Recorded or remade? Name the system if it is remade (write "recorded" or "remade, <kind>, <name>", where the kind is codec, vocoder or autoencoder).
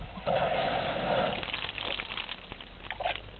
recorded